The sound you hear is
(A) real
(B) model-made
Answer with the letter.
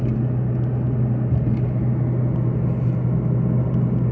A